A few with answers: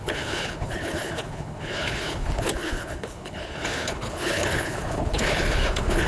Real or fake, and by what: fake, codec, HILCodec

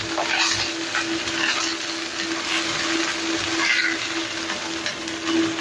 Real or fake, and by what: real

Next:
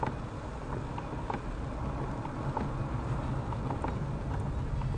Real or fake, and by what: real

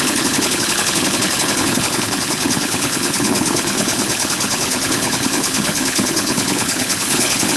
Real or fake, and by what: fake, codec, HILCodec